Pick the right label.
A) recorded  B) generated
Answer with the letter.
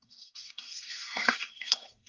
B